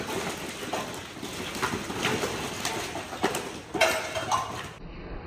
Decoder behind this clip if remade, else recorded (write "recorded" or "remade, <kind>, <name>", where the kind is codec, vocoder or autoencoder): recorded